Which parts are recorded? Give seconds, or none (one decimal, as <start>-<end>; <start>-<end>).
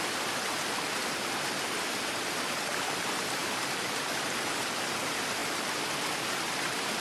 0.0-7.0